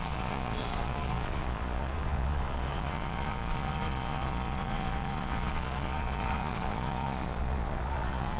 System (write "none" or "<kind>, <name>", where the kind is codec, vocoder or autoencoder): vocoder, Vocos